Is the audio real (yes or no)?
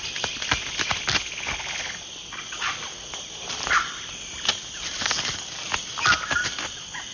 yes